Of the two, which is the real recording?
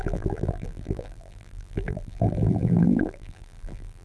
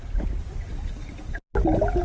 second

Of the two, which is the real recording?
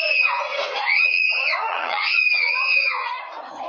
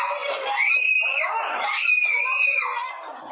second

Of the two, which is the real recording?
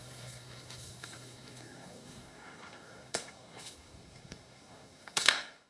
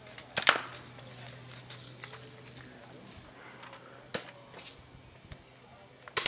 second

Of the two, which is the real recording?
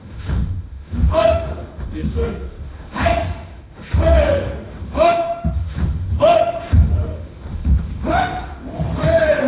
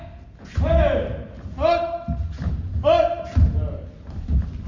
second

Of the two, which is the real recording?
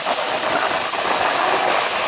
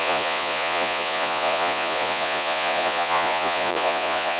first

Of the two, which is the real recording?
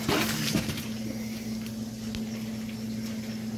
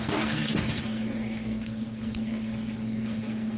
first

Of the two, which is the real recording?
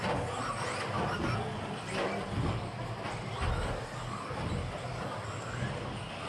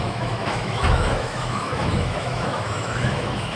first